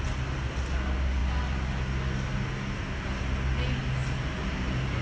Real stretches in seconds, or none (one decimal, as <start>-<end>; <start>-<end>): 0.0-5.0